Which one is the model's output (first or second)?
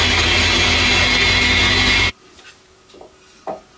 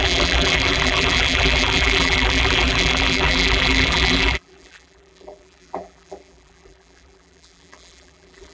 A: second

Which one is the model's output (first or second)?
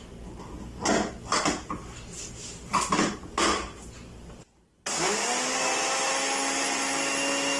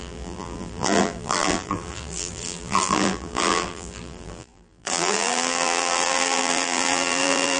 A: second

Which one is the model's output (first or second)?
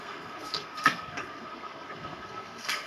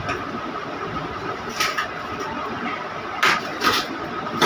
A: first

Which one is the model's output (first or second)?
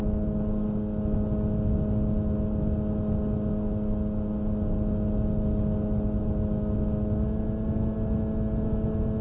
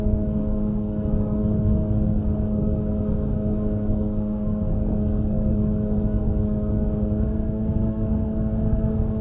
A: second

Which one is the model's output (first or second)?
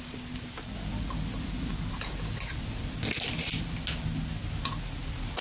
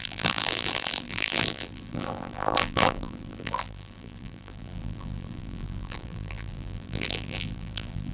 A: second